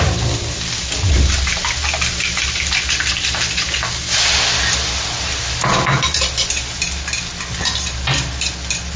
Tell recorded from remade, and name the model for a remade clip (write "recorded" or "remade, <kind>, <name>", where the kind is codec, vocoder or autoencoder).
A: recorded